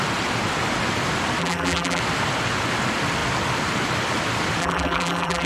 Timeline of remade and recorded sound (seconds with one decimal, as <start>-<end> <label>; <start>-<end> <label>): 0.0-1.4 recorded; 1.4-2.0 remade; 2.0-4.6 recorded; 4.6-5.5 remade